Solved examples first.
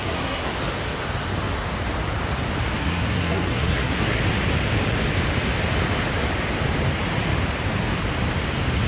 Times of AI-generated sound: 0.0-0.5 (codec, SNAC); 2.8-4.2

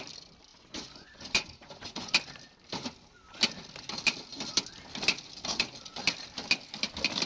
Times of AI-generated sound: 0.5-2.1 (vocoder, Vocos)

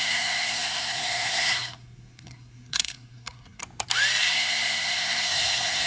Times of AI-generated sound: 0.0-3.6 (codec, SNAC); 4.2-5.9